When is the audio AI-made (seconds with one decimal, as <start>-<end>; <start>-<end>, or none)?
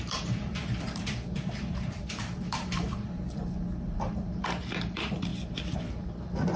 0.0-3.2; 3.9-5.3; 5.8-6.6